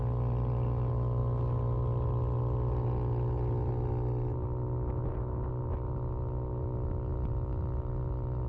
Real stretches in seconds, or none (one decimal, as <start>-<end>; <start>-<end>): 0.0-8.5